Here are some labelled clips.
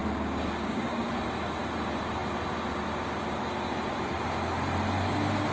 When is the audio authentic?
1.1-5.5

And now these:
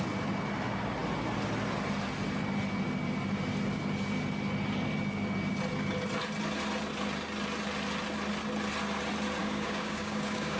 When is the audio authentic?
0.0-9.4

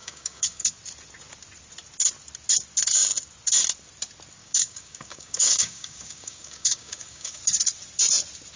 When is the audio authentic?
0.7-4.4; 7.4-8.6

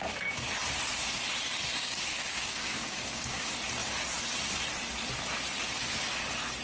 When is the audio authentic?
0.0-1.8; 3.4-6.6

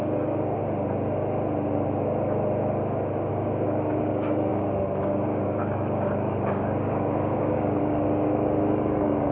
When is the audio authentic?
0.6-3.3

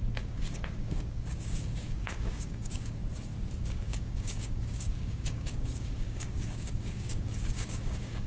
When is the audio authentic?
3.0-3.6

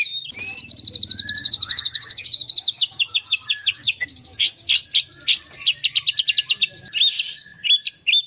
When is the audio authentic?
0.0-1.4; 4.7-8.3